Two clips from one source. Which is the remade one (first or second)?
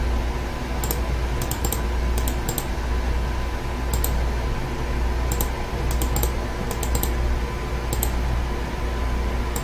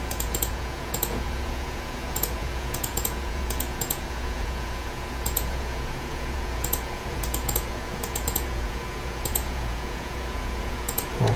second